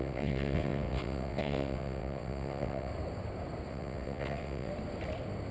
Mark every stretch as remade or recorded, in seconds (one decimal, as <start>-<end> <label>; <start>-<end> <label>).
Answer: 0.0-2.9 remade; 2.9-3.7 recorded; 3.7-4.7 remade; 4.7-5.5 recorded